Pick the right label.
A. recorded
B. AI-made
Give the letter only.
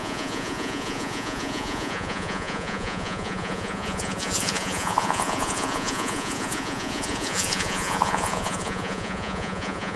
B